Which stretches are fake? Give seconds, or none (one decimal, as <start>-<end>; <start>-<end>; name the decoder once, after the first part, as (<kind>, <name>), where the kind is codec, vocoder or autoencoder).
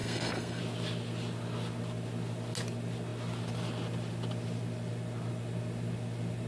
0.0-0.6 (codec, SNAC)